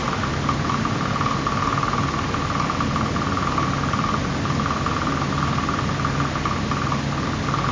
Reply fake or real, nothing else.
real